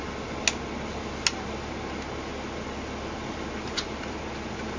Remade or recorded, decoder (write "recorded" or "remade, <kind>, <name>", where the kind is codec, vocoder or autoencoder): recorded